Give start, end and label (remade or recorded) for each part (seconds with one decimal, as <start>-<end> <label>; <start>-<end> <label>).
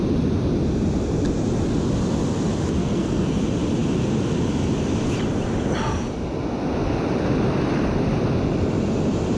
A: 0.0-2.8 recorded; 2.8-3.4 remade; 3.4-9.4 recorded